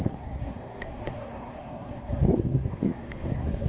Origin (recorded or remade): remade